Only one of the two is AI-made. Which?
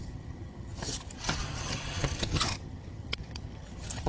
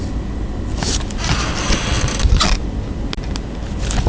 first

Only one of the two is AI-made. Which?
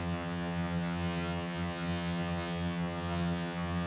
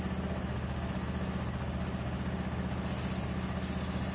first